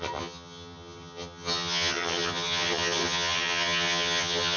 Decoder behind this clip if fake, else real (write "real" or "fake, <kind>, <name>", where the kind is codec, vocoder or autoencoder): fake, vocoder, HiFi-GAN